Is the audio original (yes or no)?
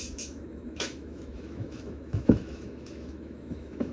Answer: no